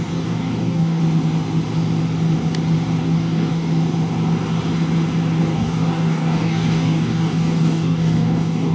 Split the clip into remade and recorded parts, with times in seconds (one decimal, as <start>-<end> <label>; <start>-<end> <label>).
0.0-1.0 remade; 1.0-3.0 recorded; 3.0-3.7 remade; 3.7-5.4 recorded; 5.4-8.7 remade